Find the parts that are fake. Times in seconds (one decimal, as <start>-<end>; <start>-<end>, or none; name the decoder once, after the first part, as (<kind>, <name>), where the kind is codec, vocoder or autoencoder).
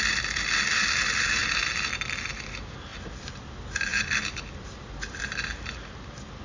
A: none